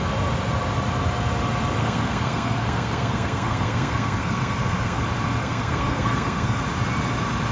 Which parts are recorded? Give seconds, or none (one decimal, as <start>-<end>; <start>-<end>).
0.0-1.8; 5.0-5.4; 6.6-7.5